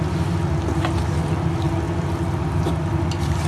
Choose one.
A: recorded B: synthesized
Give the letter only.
A